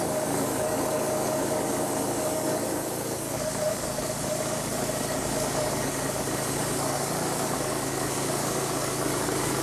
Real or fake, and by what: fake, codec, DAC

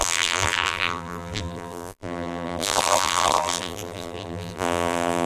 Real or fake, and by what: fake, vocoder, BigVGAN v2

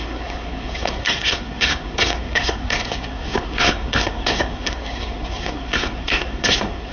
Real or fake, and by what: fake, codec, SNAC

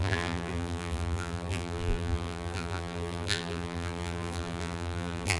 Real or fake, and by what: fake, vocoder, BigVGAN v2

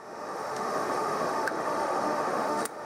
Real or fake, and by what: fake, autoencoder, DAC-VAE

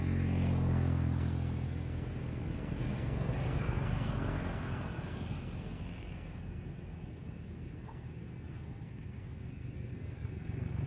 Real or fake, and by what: fake, codec, SNAC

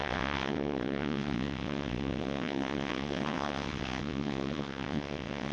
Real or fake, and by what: fake, vocoder, WaveNeXt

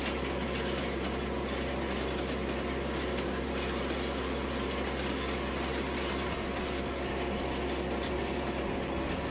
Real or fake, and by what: real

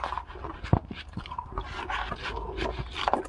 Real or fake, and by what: real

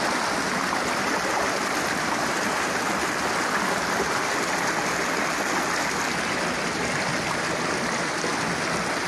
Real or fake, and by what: real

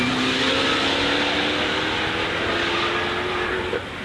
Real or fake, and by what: real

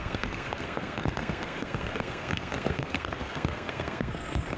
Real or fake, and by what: fake, codec, SNAC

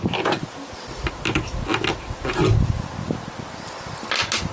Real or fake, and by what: real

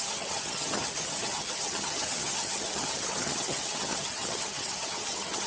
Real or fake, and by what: fake, vocoder, HiFi-GAN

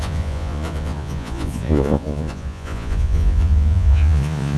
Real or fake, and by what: fake, vocoder, Vocos